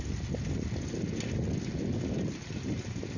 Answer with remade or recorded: recorded